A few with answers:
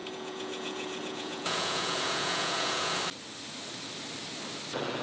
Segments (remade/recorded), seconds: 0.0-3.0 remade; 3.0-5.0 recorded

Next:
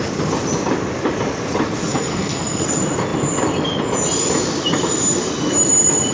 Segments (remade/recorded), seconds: 0.0-1.9 recorded; 1.9-2.7 remade; 2.7-6.1 recorded

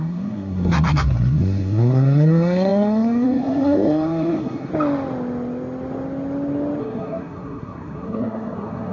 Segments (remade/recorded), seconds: 0.0-4.7 remade; 4.7-6.8 recorded; 6.8-8.9 remade